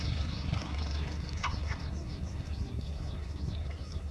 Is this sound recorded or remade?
remade